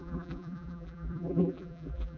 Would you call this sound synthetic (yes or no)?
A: yes